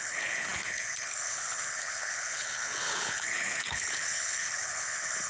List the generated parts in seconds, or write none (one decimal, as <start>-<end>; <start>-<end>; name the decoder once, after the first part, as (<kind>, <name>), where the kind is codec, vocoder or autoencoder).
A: 0.0-5.3 (codec, HILCodec)